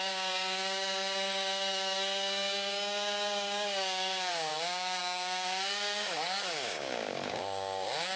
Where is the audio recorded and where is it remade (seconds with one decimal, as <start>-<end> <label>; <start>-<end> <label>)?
0.0-8.2 remade